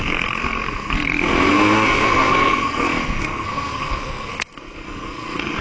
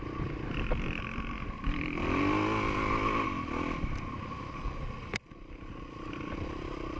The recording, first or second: second